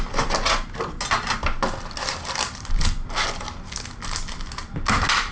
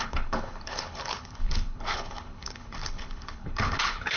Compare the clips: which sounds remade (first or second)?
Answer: second